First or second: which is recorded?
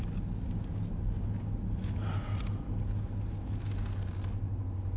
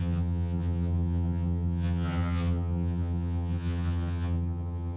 first